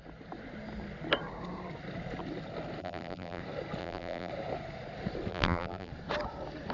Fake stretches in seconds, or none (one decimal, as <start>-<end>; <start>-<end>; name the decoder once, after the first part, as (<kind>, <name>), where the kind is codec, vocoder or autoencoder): 2.8-3.4 (vocoder, BigVGAN v2); 3.8-4.3; 5.3-5.9